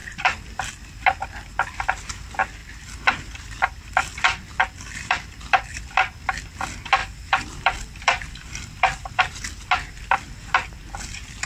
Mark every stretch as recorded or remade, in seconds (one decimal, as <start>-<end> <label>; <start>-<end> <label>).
0.0-0.6 remade; 0.6-2.6 recorded; 2.6-5.8 remade; 5.8-7.0 recorded; 7.0-9.2 remade; 9.2-11.5 recorded